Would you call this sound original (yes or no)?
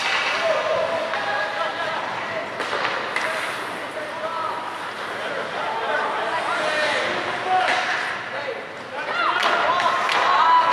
yes